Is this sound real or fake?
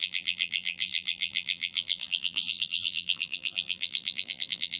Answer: fake